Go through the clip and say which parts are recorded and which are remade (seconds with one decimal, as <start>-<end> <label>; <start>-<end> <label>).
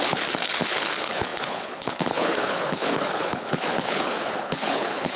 0.0-5.2 remade